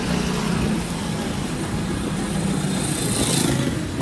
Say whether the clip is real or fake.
real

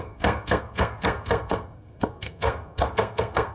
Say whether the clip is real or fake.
fake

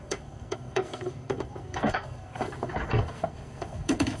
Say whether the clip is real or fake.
fake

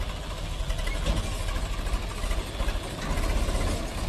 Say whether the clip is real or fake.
real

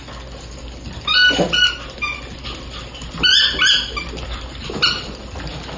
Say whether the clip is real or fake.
real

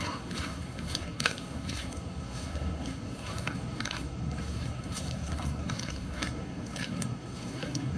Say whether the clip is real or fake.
fake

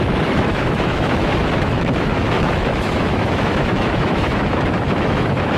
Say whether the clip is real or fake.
fake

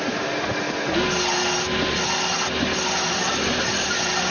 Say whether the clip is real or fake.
real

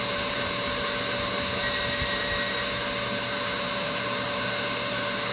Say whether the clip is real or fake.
real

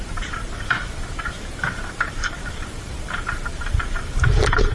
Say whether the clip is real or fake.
fake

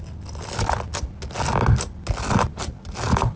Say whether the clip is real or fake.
real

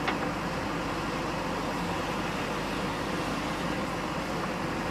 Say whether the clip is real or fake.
real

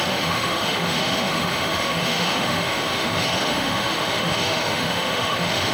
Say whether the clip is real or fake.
fake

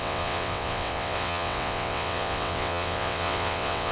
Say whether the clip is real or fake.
fake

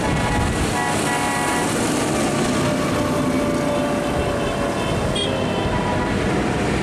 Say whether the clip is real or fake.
real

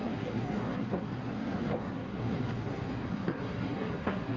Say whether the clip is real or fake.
fake